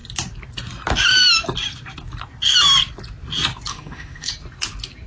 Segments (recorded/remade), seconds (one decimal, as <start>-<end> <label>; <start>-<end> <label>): 0.0-3.7 recorded; 3.7-4.3 remade; 4.3-5.1 recorded

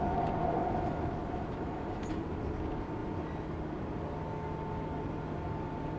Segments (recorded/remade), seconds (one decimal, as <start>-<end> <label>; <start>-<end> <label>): 0.0-0.6 recorded; 0.6-2.1 remade; 2.1-6.0 recorded